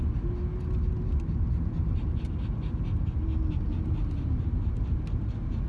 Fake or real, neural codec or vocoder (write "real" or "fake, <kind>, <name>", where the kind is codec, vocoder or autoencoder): real